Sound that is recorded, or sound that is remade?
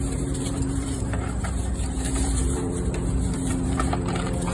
remade